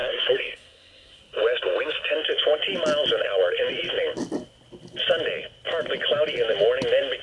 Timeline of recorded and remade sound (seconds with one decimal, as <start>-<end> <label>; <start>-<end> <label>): 0.0-1.2 remade; 1.2-7.2 recorded